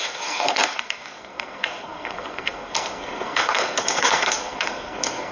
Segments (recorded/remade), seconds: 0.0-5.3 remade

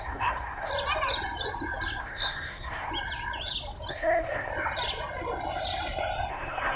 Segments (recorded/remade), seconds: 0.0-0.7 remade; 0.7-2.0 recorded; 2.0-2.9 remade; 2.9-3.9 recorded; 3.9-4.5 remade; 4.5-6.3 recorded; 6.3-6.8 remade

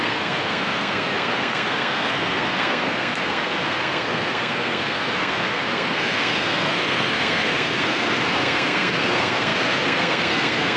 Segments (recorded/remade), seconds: 0.0-10.8 remade